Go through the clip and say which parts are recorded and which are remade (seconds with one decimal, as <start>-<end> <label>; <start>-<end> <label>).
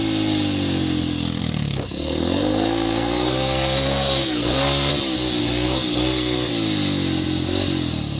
0.0-1.4 recorded; 1.4-4.9 remade; 4.9-5.4 recorded; 5.4-6.5 remade; 6.5-8.2 recorded